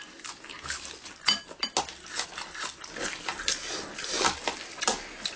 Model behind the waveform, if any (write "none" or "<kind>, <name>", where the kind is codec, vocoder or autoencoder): none